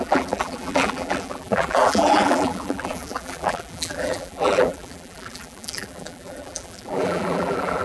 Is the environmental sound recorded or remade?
remade